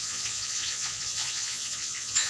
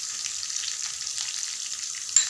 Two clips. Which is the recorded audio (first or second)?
second